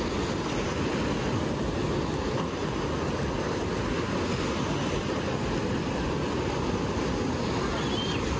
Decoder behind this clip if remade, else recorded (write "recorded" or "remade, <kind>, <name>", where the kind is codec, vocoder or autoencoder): recorded